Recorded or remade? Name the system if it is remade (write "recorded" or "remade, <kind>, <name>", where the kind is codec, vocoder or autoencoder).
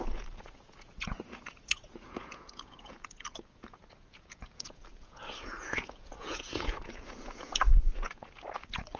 remade, vocoder, Vocos